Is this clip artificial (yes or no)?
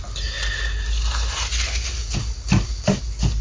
no